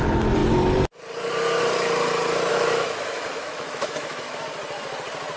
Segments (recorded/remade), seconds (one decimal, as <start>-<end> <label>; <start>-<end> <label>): 0.0-2.5 recorded; 2.5-4.4 remade; 4.4-5.4 recorded